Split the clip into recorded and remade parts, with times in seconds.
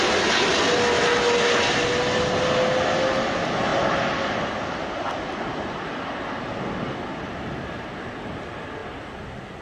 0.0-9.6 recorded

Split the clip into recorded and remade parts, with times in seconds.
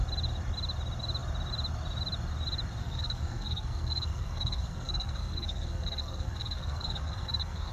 0.0-2.8 recorded; 2.8-7.7 remade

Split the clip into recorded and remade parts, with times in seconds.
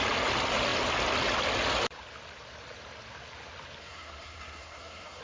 0.0-3.8 recorded; 3.8-5.2 remade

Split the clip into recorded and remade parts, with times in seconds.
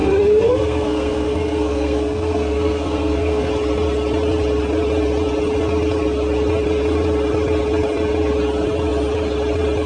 0.0-3.5 remade; 3.5-9.9 recorded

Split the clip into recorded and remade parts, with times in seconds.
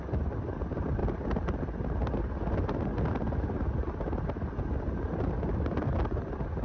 0.0-6.6 recorded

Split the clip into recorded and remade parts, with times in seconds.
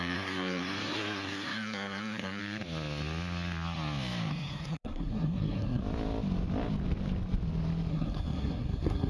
0.0-2.4 remade; 2.4-4.3 recorded; 4.3-5.8 remade; 5.8-7.9 recorded; 7.9-9.1 remade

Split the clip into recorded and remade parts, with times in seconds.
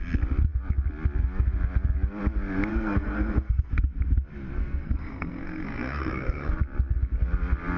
0.0-2.7 recorded; 2.7-3.7 remade; 3.7-4.6 recorded; 4.6-6.5 remade; 6.5-7.8 recorded